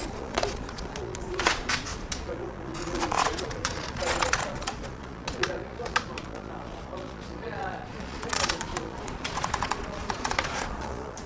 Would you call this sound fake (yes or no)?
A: yes